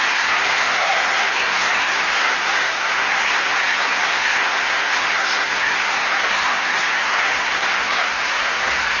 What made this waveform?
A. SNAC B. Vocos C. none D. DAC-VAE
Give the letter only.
A